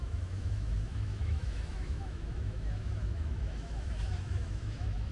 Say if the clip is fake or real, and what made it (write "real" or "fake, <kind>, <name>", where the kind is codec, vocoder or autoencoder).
fake, autoencoder, DAC-VAE